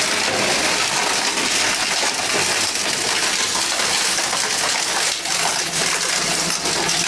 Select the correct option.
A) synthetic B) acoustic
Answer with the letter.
B